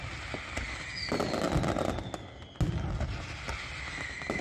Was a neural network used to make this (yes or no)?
no